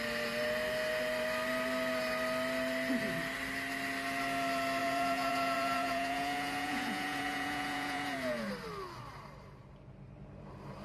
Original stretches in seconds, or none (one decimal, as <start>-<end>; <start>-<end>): 0.0-4.8; 8.5-10.8